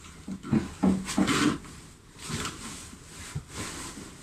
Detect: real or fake real